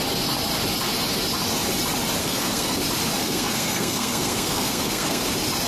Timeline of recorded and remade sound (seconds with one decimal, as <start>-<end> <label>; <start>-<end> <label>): 0.0-2.2 recorded; 2.2-2.8 remade; 2.8-3.2 recorded; 3.2-5.2 remade; 5.2-5.7 recorded